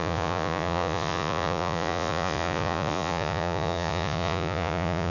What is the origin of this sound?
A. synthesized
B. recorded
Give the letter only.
A